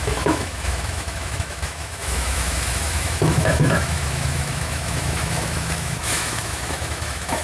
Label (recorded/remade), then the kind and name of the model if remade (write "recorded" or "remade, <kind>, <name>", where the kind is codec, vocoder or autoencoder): remade, autoencoder, DAC-VAE